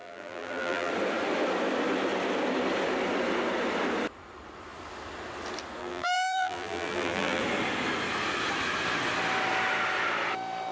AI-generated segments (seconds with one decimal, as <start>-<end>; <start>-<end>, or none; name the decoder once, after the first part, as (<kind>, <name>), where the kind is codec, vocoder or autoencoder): 0.0-0.9 (vocoder, BigVGAN v2); 5.8-7.4